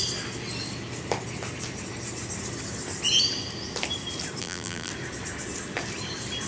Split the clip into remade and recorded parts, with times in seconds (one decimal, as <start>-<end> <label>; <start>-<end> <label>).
0.0-4.4 recorded; 4.4-4.9 remade; 4.9-6.5 recorded